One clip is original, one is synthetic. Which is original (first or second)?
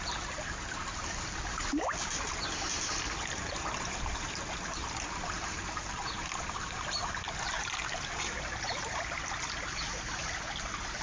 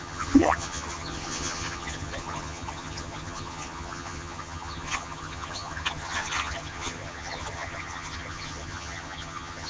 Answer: first